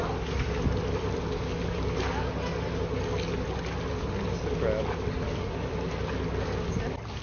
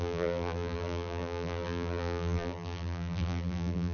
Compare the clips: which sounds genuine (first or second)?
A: first